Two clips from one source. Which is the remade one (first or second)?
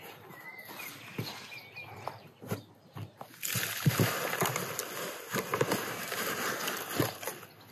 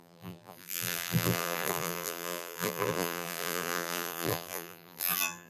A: second